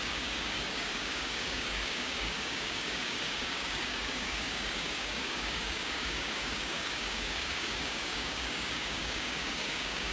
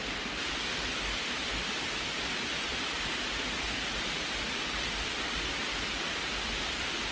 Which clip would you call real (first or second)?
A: second